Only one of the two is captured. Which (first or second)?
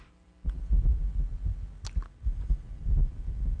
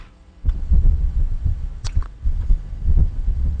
first